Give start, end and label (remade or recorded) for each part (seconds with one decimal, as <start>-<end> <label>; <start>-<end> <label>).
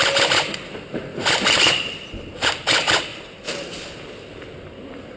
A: 0.0-1.1 recorded; 1.1-1.7 remade; 1.7-3.1 recorded; 3.1-3.9 remade; 3.9-5.2 recorded